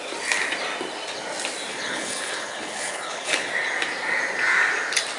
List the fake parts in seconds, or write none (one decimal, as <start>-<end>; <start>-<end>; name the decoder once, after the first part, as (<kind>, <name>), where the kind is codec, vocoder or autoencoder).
1.7-3.5 (codec, HILCodec)